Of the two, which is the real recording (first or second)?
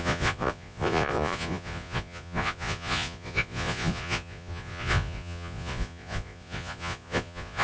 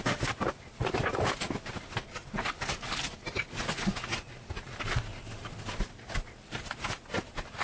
second